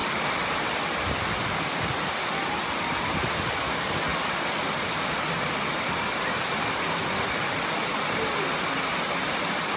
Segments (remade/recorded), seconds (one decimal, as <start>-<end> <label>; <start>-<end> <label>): 0.0-1.5 remade; 1.5-4.1 recorded; 4.1-7.9 remade; 7.9-9.8 recorded